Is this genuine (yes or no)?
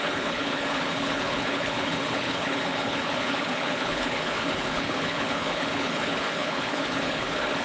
no